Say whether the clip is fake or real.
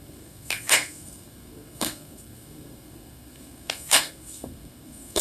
fake